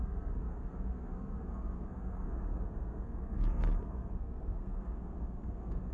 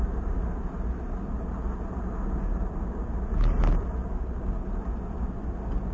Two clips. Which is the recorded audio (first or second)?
second